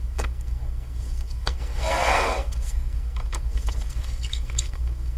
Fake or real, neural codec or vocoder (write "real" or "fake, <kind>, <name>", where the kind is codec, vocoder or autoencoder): fake, codec, SNAC